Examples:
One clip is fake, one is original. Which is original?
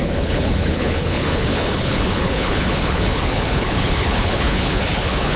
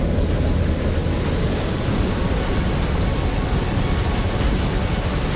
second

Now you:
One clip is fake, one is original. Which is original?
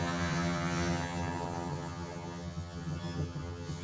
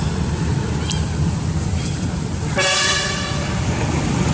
second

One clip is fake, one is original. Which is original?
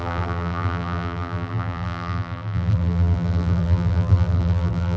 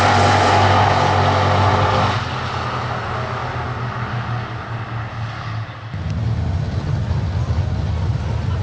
second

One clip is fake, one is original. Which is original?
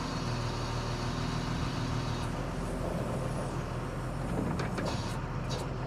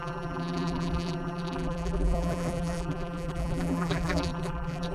first